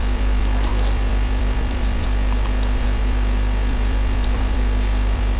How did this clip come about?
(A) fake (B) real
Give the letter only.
A